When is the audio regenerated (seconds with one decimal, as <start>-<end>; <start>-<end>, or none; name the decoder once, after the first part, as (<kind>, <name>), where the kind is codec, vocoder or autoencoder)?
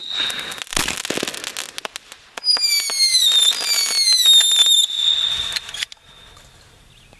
none